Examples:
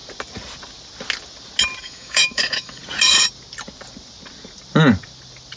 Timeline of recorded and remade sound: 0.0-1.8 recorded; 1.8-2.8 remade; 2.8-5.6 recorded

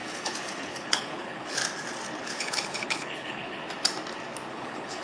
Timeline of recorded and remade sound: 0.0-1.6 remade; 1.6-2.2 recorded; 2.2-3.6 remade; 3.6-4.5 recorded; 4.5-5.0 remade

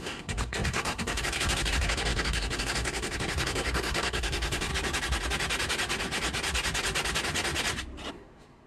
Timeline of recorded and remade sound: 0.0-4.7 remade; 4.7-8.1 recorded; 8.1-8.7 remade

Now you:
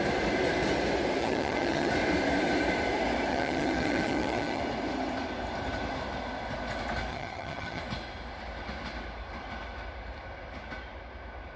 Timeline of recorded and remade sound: 0.0-1.2 recorded; 1.2-1.9 remade; 1.9-3.3 recorded; 3.3-4.6 remade; 4.6-7.1 recorded; 7.1-7.8 remade; 7.8-11.6 recorded

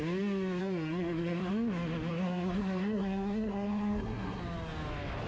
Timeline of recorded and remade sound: 0.0-0.6 recorded; 0.6-1.5 remade; 1.5-2.1 recorded; 2.1-4.4 remade; 4.4-5.3 recorded